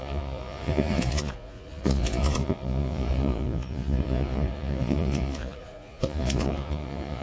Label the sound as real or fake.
fake